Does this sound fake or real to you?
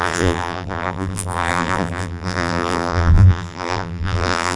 fake